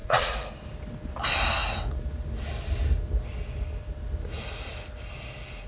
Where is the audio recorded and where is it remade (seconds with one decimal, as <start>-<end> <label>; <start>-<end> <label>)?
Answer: 0.0-0.5 remade; 0.5-5.7 recorded